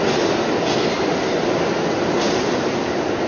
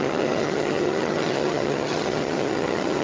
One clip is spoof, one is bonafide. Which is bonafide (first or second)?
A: first